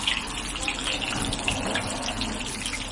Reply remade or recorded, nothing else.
recorded